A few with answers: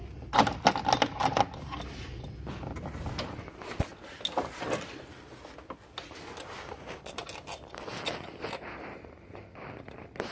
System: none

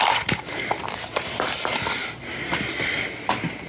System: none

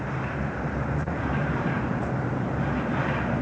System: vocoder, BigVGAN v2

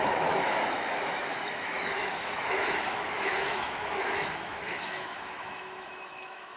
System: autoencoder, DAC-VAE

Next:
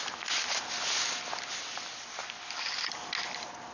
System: none